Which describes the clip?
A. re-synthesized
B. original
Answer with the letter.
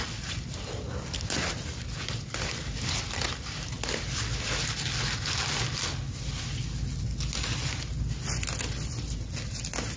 B